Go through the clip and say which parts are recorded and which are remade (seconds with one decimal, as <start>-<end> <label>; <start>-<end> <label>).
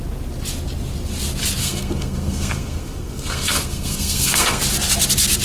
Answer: 0.0-1.6 recorded; 1.6-4.6 remade; 4.6-5.4 recorded